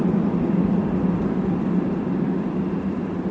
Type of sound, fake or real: real